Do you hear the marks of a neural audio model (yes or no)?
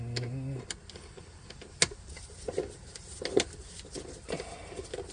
no